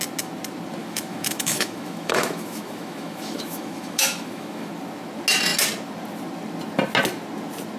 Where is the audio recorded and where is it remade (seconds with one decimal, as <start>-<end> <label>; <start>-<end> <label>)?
0.0-0.8 recorded; 0.8-4.7 remade; 4.7-7.8 recorded